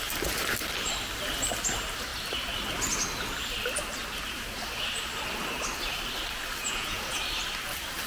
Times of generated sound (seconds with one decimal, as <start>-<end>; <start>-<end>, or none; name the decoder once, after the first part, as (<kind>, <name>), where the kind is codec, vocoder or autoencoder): 6.6-7.2 (vocoder, Vocos)